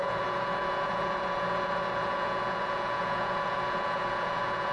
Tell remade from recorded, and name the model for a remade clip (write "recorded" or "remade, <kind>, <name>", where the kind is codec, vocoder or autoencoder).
remade, vocoder, Vocos